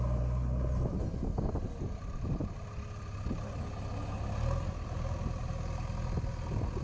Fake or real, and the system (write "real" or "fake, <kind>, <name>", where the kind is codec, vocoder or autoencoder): real